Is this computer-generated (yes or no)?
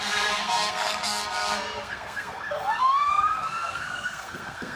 yes